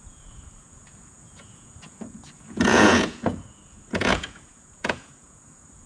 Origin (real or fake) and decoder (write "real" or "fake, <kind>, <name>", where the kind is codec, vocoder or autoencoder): fake, vocoder, Vocos